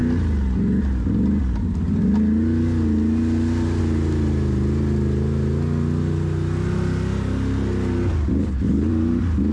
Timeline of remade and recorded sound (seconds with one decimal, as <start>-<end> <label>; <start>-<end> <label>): 0.0-8.4 recorded; 8.4-8.9 remade; 8.9-9.5 recorded